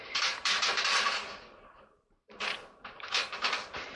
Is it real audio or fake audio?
fake